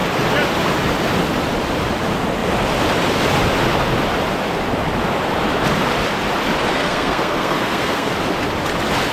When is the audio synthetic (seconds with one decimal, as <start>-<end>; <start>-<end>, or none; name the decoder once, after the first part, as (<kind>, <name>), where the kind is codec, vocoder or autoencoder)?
6.7-8.1 (codec, SNAC)